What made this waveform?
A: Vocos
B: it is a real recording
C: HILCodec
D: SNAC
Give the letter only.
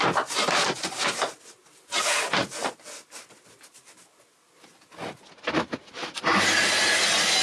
B